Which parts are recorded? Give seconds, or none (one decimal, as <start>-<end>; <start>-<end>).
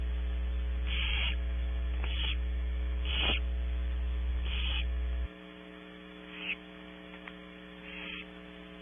0.0-1.1; 3.1-4.3; 7.8-8.8